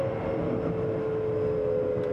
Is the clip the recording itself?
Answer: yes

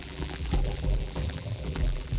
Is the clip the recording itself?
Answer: no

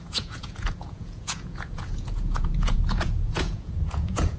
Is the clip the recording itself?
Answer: no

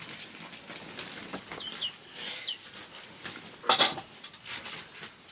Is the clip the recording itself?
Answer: yes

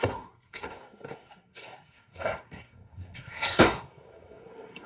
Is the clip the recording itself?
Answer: no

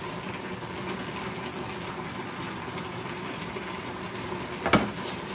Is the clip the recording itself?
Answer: yes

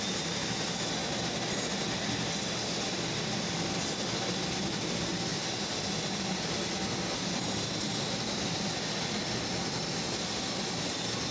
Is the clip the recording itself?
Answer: yes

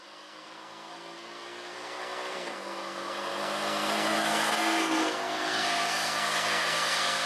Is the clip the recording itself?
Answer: no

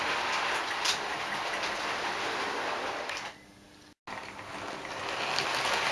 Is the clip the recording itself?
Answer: yes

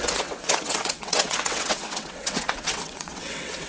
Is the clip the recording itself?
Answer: no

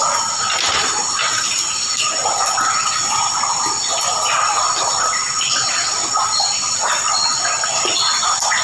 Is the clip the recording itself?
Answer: yes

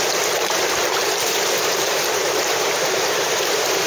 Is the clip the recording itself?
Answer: no